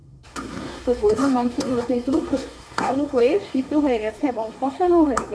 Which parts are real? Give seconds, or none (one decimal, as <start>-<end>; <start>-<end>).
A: none